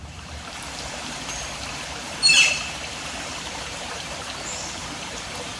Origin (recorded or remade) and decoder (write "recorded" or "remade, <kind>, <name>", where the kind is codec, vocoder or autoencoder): remade, vocoder, BigVGAN v2